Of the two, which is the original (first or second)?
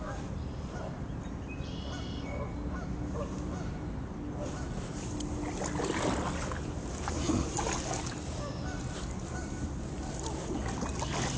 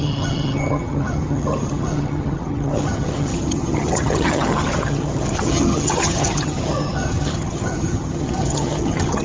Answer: first